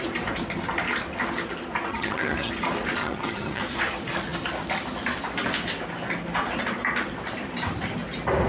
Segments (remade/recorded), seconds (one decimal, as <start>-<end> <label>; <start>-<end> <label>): 0.0-1.9 recorded; 1.9-2.5 remade; 2.5-3.0 recorded; 3.0-3.6 remade; 3.6-8.5 recorded